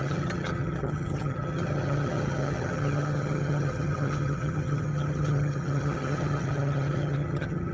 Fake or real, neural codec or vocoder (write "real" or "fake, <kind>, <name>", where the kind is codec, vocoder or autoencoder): fake, vocoder, HiFi-GAN